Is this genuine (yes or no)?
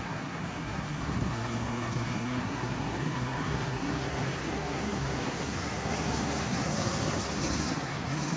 no